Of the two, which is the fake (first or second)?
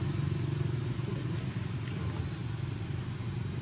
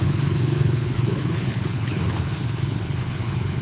second